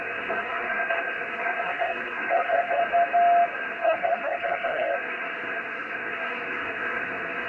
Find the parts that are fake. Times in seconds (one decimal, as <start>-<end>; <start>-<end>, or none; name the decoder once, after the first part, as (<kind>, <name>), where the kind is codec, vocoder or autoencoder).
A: 0.0-2.8 (codec, SNAC); 3.6-7.5